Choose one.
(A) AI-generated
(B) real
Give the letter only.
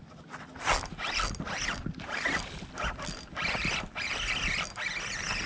B